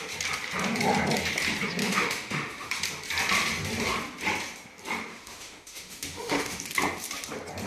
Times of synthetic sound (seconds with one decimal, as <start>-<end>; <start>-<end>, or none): 1.8-2.7; 5.1-6.6